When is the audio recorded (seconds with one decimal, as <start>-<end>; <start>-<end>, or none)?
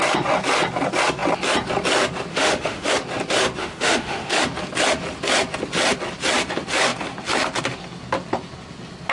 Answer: 0.0-2.3; 2.9-3.6; 4.4-9.1